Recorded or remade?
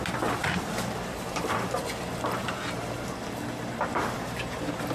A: recorded